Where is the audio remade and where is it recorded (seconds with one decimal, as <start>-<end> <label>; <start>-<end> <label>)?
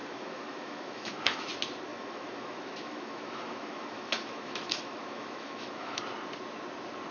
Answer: 0.0-1.5 remade; 1.5-1.9 recorded; 1.9-6.0 remade; 6.0-7.1 recorded